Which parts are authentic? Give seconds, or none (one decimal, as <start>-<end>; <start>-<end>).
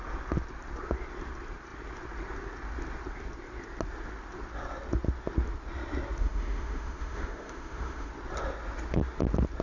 0.0-6.2; 8.1-9.6